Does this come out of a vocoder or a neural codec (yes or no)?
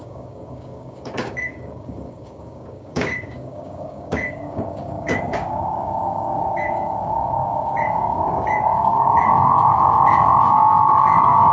yes